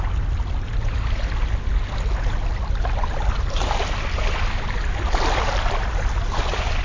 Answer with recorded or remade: recorded